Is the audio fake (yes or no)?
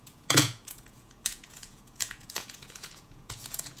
yes